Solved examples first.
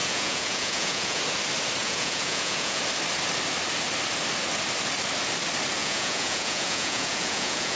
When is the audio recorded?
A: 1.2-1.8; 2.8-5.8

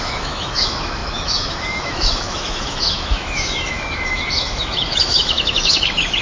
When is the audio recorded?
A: none

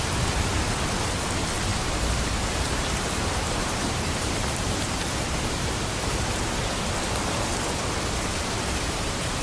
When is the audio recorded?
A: 0.0-1.7; 6.2-8.3

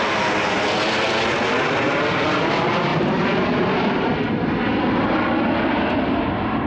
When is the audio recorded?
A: 0.0-2.9; 4.1-6.7

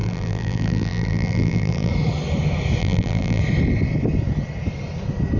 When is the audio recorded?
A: 1.9-2.8; 3.4-5.4

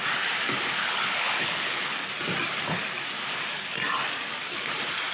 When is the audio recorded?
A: 0.0-0.8; 1.9-5.1

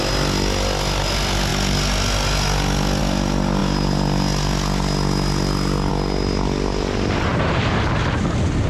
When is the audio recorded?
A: 0.0-7.3; 8.2-8.7